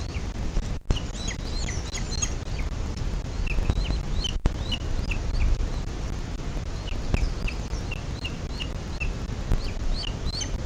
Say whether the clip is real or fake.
real